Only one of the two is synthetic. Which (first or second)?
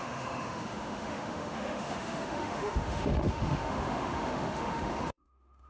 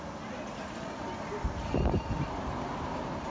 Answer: first